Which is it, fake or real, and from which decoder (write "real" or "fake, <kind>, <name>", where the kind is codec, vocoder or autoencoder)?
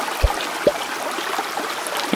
real